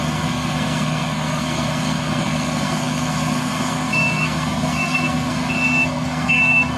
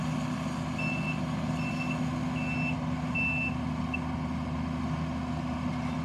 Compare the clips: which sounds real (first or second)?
second